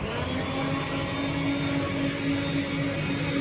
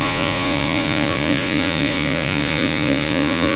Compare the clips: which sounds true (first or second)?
first